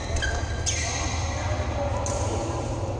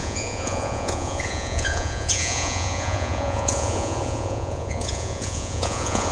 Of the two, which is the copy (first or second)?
second